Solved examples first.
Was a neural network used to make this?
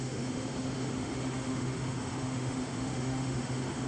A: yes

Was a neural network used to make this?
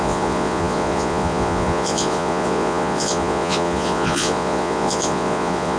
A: yes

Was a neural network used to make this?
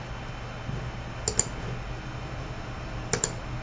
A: no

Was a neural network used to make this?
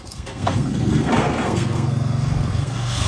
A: yes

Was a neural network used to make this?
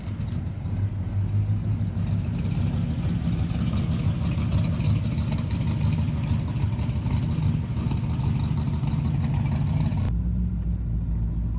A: no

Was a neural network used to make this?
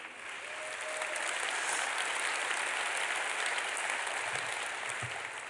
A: no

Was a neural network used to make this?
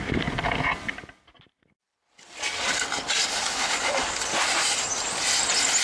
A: no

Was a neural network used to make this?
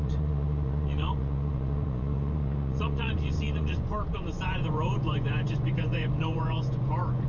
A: yes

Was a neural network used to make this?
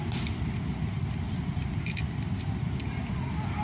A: no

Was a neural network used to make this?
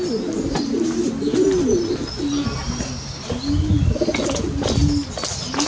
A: no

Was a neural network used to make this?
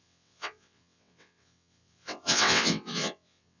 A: yes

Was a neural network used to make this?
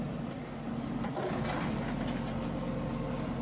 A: no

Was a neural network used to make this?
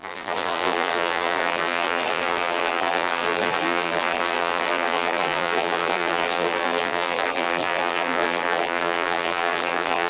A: yes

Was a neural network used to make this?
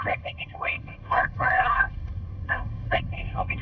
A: yes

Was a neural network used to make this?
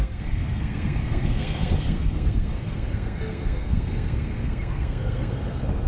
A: yes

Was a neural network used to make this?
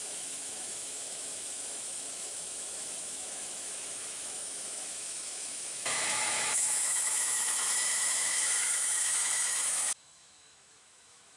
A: yes